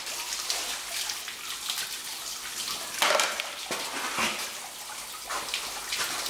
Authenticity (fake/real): real